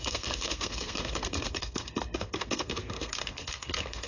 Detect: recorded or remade remade